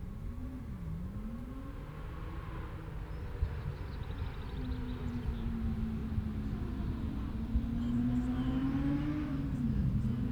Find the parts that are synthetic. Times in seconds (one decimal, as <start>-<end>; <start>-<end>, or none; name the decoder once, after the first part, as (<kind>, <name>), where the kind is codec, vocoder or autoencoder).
none